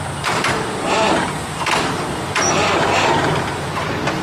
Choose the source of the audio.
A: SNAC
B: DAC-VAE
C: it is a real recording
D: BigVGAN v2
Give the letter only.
D